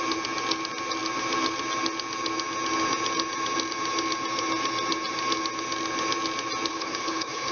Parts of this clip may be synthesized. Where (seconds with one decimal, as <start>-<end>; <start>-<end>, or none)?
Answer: 6.7-7.5